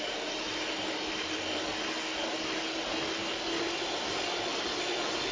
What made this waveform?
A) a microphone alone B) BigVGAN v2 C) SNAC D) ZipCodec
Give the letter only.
A